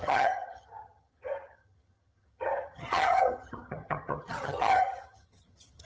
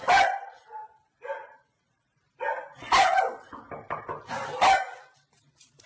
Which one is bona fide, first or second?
second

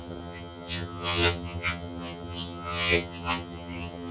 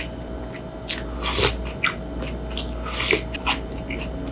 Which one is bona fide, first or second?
second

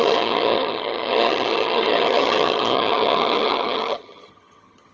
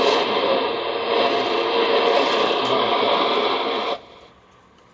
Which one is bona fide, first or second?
second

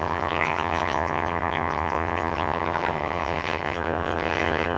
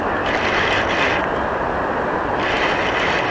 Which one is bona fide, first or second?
second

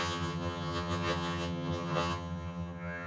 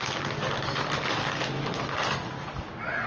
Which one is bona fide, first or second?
second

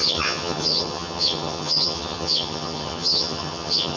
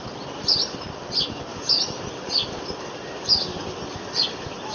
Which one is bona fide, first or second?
second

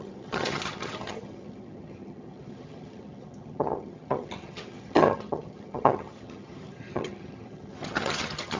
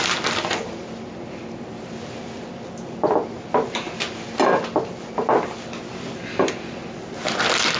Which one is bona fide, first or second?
second